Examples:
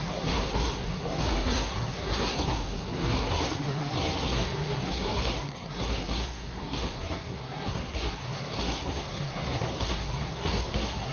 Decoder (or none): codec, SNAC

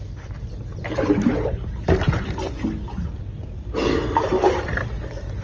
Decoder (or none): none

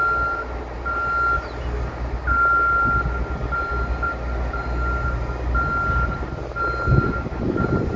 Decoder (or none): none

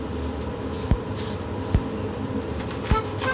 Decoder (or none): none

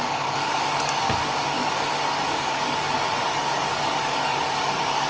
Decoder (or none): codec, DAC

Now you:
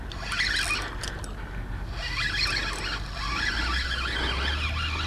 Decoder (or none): none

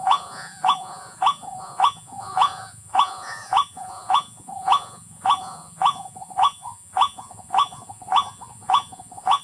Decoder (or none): vocoder, Vocos